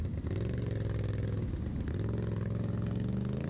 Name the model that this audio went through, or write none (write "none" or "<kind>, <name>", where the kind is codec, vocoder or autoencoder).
none